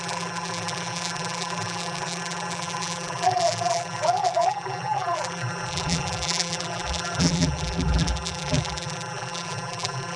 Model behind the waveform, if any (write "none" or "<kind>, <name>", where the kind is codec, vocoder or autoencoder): vocoder, BigVGAN v2